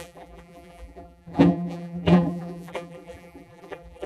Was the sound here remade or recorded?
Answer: remade